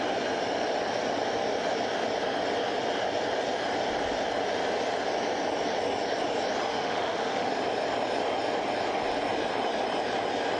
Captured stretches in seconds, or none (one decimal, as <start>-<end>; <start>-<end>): 0.0-6.7; 7.5-10.6

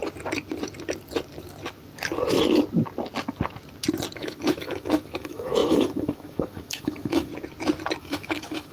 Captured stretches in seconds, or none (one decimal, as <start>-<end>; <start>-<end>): 0.0-4.2; 7.3-8.0

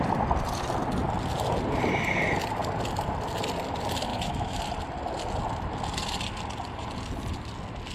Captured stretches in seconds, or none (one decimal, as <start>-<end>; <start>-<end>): 0.0-4.1; 4.6-7.9

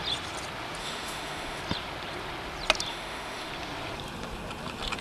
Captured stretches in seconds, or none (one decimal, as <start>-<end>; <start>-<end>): 0.0-0.8; 1.6-2.9; 3.5-5.0